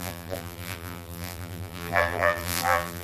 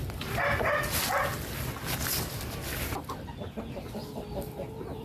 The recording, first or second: second